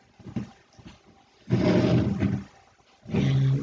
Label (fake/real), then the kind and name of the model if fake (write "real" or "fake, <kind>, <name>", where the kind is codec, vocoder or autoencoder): real